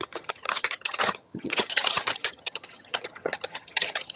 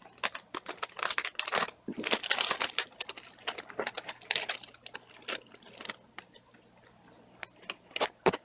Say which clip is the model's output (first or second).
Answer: first